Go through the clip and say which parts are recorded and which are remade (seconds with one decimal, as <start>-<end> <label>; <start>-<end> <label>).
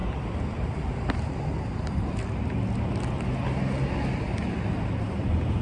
0.0-1.4 remade; 1.4-5.6 recorded